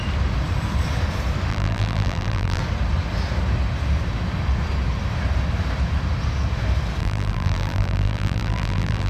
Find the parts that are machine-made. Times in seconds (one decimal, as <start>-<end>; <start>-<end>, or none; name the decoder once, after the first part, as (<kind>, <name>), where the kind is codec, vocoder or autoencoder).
1.5-2.6 (vocoder, BigVGAN v2); 7.0-9.1